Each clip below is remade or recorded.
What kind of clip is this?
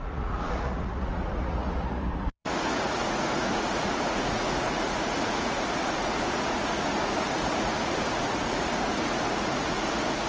remade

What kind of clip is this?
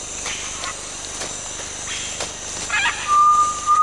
recorded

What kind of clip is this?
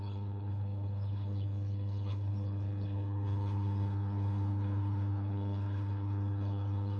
remade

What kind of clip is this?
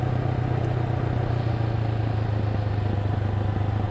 recorded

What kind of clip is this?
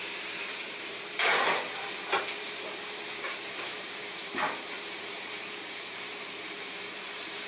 remade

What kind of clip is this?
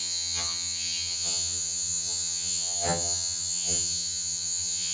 remade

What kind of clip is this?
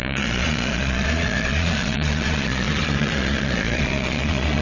remade